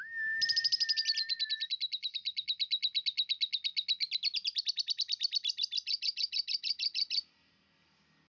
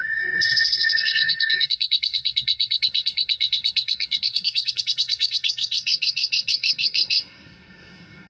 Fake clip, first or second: second